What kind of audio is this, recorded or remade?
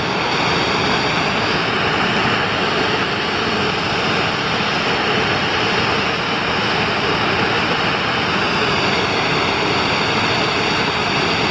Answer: recorded